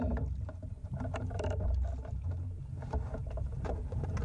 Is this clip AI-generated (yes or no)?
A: yes